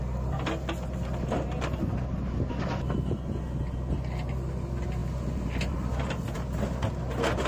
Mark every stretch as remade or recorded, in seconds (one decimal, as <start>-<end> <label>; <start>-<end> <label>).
0.0-7.5 recorded

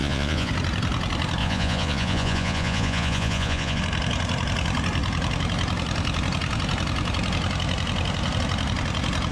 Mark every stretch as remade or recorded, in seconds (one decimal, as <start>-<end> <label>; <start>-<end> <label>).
0.0-0.5 remade; 0.5-1.4 recorded; 1.4-3.8 remade; 3.8-9.3 recorded

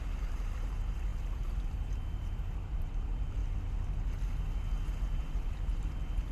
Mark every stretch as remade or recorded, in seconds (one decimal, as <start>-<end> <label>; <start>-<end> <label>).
0.0-3.4 remade; 3.4-5.0 recorded; 5.0-6.3 remade

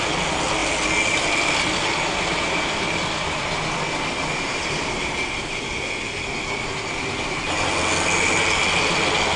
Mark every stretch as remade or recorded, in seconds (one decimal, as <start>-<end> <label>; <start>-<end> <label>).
0.0-9.4 recorded

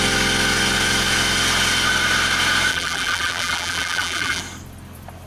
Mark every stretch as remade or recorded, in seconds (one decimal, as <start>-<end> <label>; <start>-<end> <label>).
0.0-2.7 recorded; 2.7-4.4 remade; 4.4-5.3 recorded

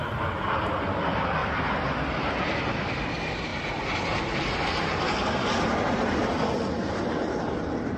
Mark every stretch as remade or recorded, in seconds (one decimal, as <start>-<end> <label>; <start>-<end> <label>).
0.0-8.0 recorded